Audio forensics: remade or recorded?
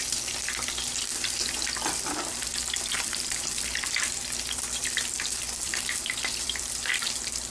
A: remade